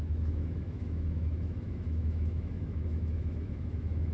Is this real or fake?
fake